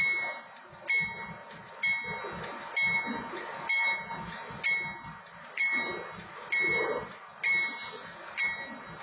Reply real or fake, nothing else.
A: real